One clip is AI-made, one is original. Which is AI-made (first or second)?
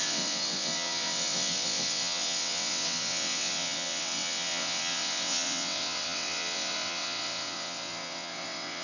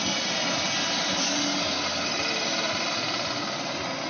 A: first